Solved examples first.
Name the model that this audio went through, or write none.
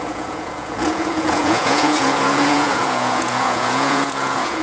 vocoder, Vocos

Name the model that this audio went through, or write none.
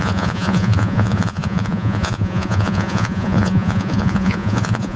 vocoder, Vocos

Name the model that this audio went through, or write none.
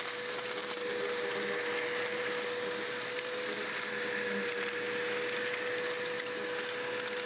none